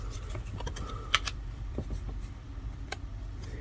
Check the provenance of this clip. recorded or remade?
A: remade